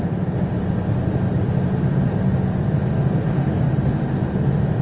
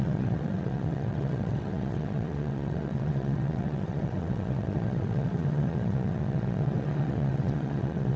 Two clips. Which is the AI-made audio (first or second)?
second